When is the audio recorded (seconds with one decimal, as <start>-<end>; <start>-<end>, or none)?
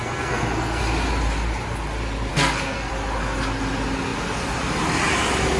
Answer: 0.8-2.3; 2.9-5.6